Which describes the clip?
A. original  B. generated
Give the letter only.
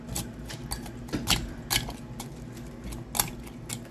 A